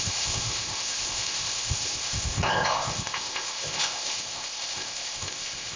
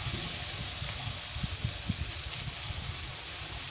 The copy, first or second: first